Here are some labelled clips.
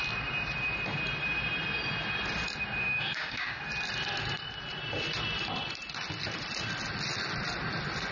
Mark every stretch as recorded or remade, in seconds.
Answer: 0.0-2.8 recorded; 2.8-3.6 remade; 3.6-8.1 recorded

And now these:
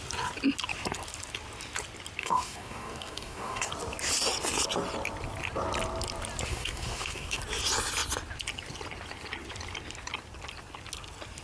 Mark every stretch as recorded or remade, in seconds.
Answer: 0.0-2.2 recorded; 2.2-3.7 remade; 3.7-6.5 recorded; 6.5-7.4 remade; 7.4-11.4 recorded